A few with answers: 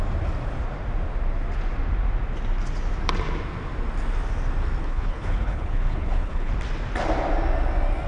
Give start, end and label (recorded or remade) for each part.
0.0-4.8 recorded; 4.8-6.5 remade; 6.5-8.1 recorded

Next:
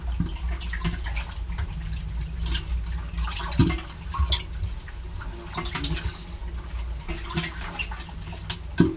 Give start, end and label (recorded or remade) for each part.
0.0-9.0 recorded

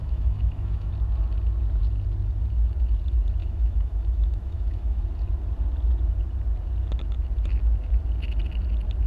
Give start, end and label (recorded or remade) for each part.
0.0-0.9 remade; 0.9-3.4 recorded; 3.4-5.0 remade; 5.0-9.1 recorded

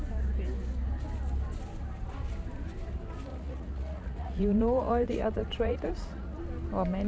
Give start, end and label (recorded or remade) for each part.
0.0-3.3 recorded; 3.3-6.4 remade; 6.4-7.1 recorded

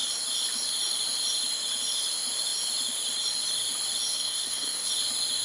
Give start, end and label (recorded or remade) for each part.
0.0-4.1 recorded; 4.1-4.9 remade; 4.9-5.4 recorded

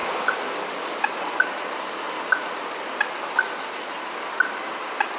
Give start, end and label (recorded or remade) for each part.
0.0-5.2 recorded

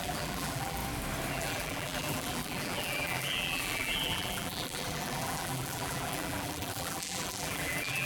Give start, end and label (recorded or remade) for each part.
0.0-0.8 remade; 0.8-1.3 recorded; 1.3-8.1 remade

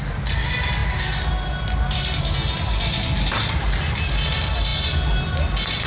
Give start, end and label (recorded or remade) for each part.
0.0-5.9 recorded